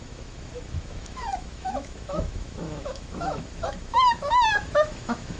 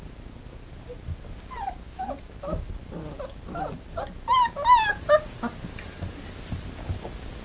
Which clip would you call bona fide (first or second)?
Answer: second